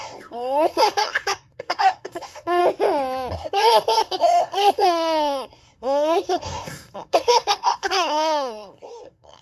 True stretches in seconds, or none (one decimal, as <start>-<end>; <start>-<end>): 2.6-3.3